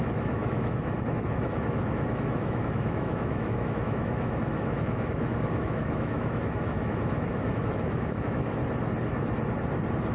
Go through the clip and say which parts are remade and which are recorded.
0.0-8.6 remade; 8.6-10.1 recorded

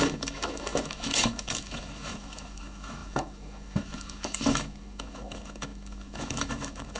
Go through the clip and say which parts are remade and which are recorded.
0.0-7.0 remade

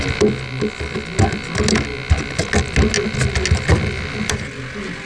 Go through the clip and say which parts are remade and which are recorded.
0.0-5.1 recorded

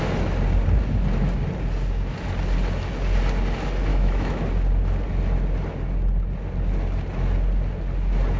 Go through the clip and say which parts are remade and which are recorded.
0.0-3.9 recorded; 3.9-4.5 remade; 4.5-8.4 recorded

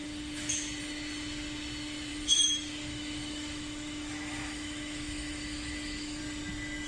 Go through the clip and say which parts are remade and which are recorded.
0.0-2.1 recorded; 2.1-6.2 remade; 6.2-6.9 recorded